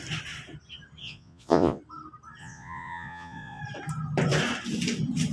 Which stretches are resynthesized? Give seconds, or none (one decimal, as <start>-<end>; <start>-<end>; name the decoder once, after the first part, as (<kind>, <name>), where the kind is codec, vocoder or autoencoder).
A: 1.0-1.8 (vocoder, Vocos); 2.4-3.6